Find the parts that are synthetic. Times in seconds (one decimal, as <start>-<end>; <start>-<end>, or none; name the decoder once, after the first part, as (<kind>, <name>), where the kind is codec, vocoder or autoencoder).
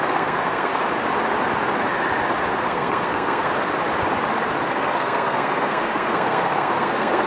0.0-0.7 (codec, SNAC); 2.5-3.5; 4.7-7.3